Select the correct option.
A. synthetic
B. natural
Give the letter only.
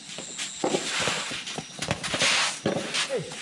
B